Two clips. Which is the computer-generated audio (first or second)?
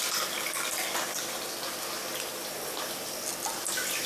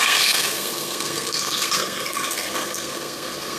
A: second